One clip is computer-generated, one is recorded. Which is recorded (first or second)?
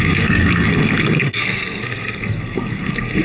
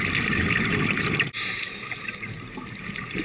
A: second